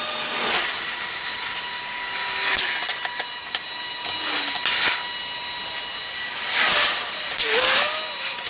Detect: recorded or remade recorded